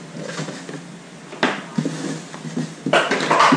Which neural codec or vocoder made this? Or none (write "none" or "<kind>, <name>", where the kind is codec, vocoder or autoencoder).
none